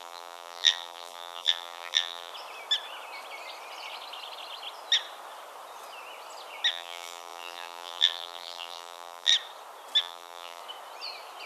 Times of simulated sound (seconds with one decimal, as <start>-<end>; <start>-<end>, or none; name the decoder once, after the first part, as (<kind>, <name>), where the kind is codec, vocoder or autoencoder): 0.0-2.3 (vocoder, BigVGAN v2); 6.7-9.3; 10.0-10.6